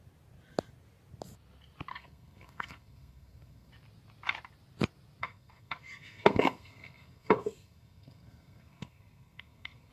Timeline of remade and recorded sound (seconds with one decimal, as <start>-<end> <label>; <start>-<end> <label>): 0.0-1.9 recorded; 1.9-3.7 remade; 3.7-5.2 recorded; 5.2-9.9 remade